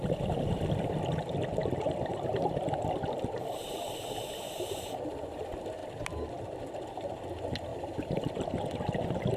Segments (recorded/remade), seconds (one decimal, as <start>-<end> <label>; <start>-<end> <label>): 0.0-2.1 recorded; 2.1-4.8 remade; 4.8-5.8 recorded; 5.8-6.6 remade; 6.6-7.7 recorded; 7.7-8.6 remade; 8.6-9.4 recorded